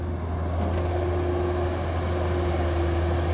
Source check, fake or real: real